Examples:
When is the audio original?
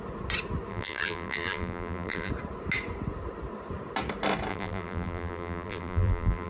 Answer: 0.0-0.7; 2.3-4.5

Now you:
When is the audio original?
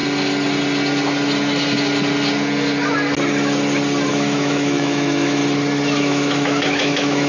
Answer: 0.0-4.1; 5.4-6.0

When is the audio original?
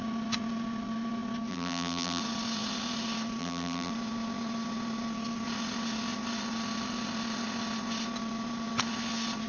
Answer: 0.0-1.5; 2.2-3.4; 3.9-9.5